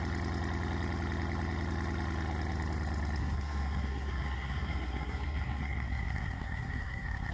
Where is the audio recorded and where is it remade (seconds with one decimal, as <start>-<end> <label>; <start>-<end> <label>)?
0.0-3.2 recorded; 3.2-7.3 remade